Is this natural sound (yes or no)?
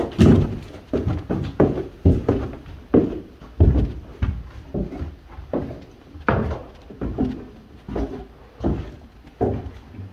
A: yes